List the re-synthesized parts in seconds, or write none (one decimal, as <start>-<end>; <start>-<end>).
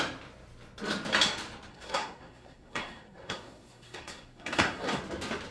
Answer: 1.7-5.0